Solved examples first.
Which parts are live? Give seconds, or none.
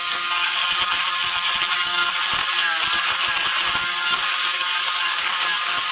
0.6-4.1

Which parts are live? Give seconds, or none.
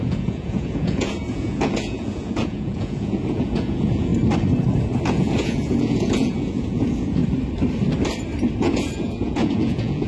4.1-5.1; 7.2-8.6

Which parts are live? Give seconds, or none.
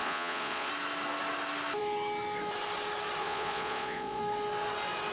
0.7-3.2; 4.2-5.1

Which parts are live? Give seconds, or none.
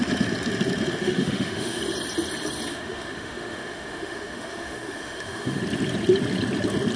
0.0-1.0; 1.8-2.7; 5.6-7.0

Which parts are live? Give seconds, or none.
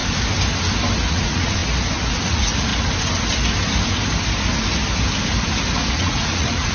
0.0-1.1; 1.6-2.1; 2.7-5.9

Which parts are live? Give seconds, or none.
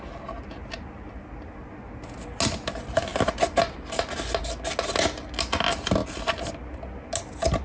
0.0-6.0; 6.5-7.6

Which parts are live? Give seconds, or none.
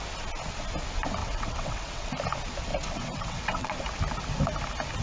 0.0-1.2; 2.1-2.7; 3.8-5.0